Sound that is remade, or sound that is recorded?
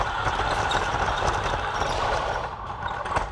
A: remade